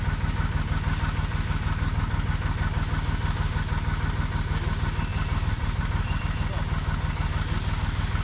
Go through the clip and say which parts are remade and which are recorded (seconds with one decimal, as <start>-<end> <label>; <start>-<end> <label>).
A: 0.0-5.1 recorded; 5.1-6.2 remade; 6.2-8.2 recorded